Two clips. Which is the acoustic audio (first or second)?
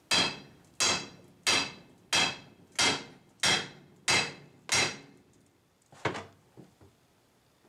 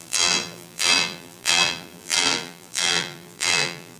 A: first